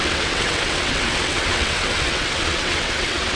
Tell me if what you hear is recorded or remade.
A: remade